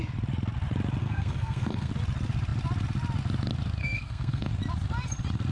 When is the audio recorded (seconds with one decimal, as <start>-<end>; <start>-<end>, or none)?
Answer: 0.0-1.0; 1.9-3.8; 4.5-5.5